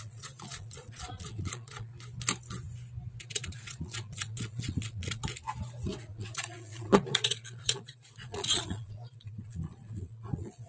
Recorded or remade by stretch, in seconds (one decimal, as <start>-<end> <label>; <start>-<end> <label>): 0.0-1.9 remade; 1.9-3.2 recorded; 3.2-5.2 remade; 5.2-6.0 recorded; 6.0-10.7 remade